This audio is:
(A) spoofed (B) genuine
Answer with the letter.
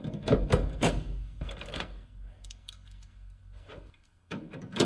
A